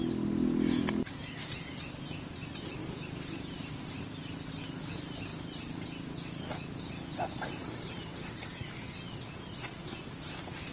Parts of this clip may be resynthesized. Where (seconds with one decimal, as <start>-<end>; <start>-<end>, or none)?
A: 2.8-4.5; 7.6-8.6